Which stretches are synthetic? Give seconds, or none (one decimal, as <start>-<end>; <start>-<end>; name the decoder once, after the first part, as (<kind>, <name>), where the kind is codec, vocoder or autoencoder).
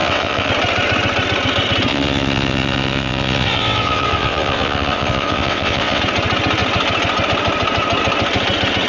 0.0-0.5 (vocoder, WaveNeXt); 1.9-6.0